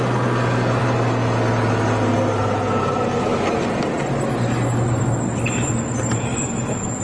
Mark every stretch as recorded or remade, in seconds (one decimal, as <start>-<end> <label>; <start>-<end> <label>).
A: 0.0-7.0 recorded